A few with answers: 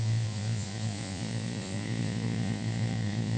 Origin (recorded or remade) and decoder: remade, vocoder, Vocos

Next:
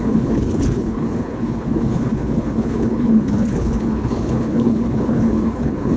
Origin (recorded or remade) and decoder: remade, codec, HILCodec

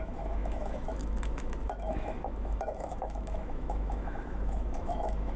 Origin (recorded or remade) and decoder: remade, autoencoder, DAC-VAE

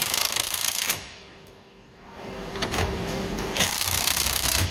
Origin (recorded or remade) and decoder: remade, codec, DAC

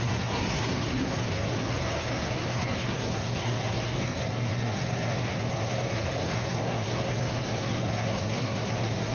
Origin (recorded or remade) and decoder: remade, codec, SNAC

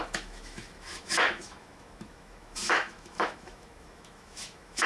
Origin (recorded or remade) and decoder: remade, autoencoder, DAC-VAE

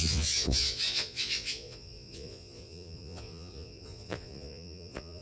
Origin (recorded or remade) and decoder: remade, vocoder, Vocos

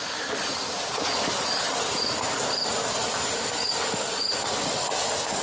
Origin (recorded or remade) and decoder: recorded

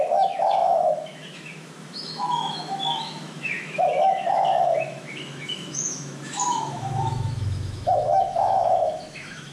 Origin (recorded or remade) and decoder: remade, autoencoder, DAC-VAE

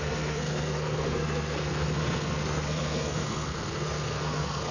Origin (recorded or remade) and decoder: remade, codec, SNAC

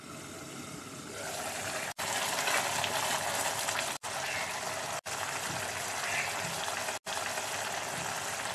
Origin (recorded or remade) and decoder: recorded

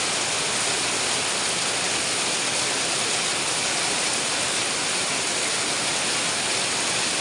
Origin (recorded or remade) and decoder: recorded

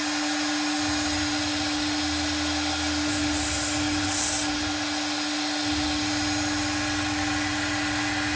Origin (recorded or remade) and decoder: recorded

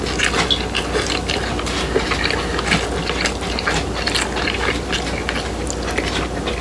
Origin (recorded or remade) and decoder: recorded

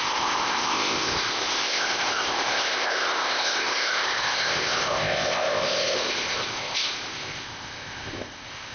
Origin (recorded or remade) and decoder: remade, codec, ZipCodec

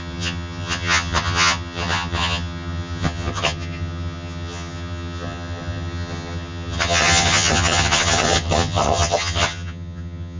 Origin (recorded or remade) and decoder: remade, vocoder, HiFi-GAN